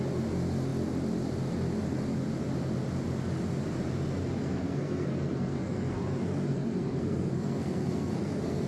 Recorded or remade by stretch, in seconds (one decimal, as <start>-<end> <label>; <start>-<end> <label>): 0.0-4.2 recorded; 4.2-8.7 remade